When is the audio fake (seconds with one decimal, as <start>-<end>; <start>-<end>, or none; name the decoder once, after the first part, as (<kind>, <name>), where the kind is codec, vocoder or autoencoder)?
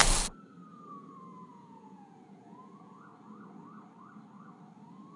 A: 0.7-3.1 (vocoder, Vocos)